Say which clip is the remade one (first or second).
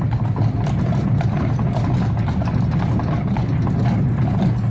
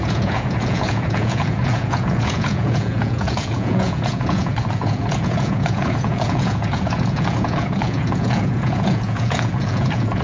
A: second